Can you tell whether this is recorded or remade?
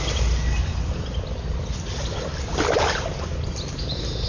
recorded